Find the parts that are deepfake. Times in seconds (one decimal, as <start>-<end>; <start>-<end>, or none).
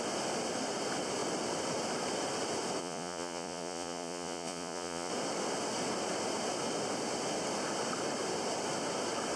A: 2.8-5.1